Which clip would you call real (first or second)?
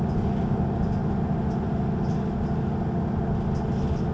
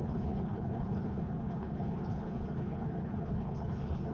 first